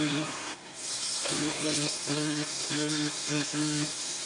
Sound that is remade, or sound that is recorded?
remade